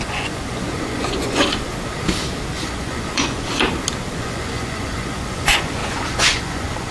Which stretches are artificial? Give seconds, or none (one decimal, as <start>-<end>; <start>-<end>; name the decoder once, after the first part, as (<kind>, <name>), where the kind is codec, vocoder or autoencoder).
0.0-1.7 (vocoder, Vocos); 2.5-3.5; 4.1-6.9